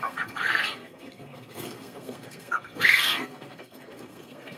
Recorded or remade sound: remade